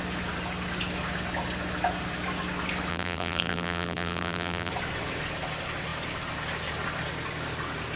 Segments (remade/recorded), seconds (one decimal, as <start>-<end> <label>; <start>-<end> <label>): 0.0-2.9 recorded; 2.9-4.7 remade; 4.7-8.0 recorded